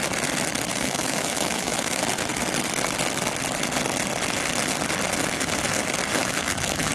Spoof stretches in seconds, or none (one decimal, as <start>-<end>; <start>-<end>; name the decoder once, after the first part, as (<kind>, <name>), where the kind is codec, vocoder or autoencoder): 0.7-2.0 (autoencoder, DAC-VAE); 6.2-6.9